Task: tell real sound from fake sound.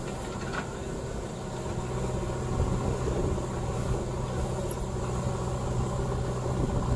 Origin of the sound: real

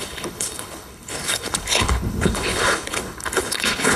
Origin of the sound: fake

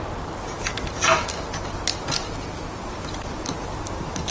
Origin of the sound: real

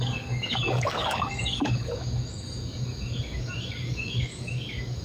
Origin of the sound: fake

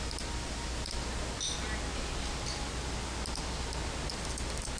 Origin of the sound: real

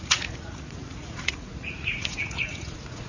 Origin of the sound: fake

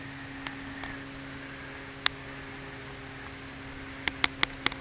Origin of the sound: real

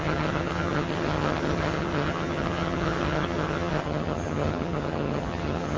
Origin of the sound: fake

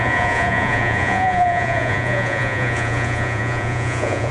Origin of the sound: fake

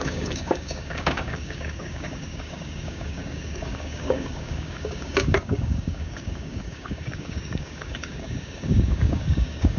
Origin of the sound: fake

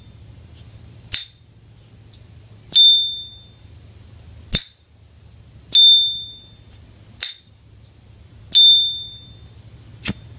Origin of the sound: real